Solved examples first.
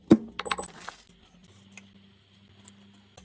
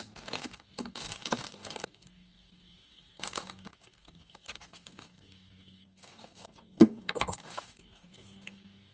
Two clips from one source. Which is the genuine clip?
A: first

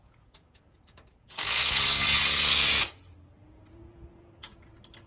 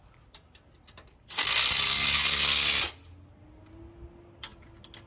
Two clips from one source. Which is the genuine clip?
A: second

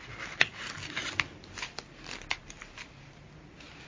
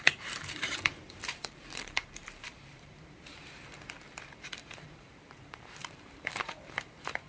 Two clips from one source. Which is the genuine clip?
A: first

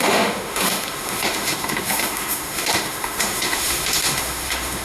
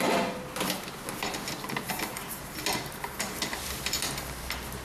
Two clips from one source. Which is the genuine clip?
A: second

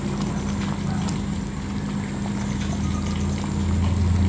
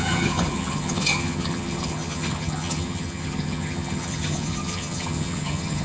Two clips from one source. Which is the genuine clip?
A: first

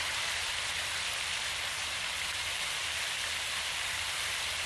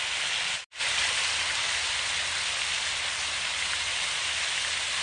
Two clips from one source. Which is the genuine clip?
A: second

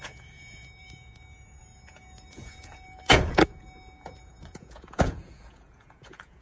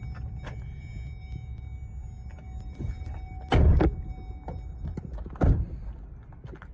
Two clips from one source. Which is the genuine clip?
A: second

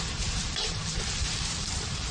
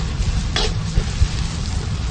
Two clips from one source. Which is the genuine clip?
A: second